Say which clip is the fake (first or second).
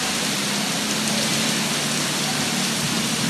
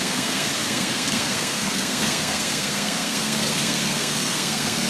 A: second